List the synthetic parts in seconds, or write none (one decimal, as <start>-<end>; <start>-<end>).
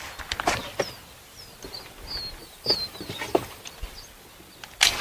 2.4-3.6